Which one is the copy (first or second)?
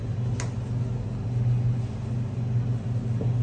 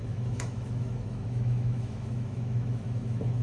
second